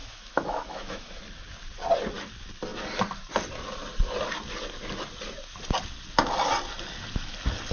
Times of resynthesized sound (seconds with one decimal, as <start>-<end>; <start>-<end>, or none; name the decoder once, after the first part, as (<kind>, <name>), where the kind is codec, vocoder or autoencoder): 0.0-1.2 (autoencoder, DAC-VAE)